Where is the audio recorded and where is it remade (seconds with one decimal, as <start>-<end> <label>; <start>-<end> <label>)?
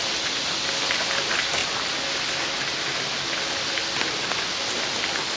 0.0-5.4 recorded